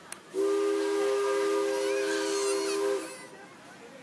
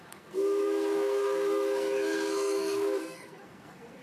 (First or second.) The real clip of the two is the first